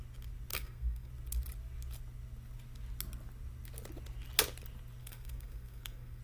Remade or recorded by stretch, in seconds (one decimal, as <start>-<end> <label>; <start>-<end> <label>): 0.0-0.5 recorded; 0.5-1.1 remade; 1.1-5.0 recorded; 5.0-6.2 remade